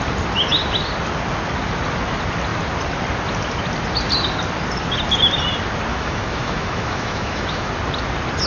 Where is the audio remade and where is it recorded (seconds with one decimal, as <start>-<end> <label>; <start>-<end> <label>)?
0.0-5.9 recorded; 5.9-7.7 remade; 7.7-8.5 recorded